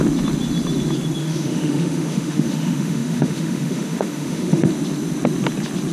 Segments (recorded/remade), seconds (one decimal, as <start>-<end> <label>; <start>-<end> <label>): 0.0-1.2 recorded; 1.2-4.7 remade; 4.7-5.9 recorded